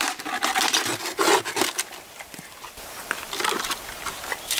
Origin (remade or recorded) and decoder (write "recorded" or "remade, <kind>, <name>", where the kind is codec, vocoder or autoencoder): remade, vocoder, BigVGAN v2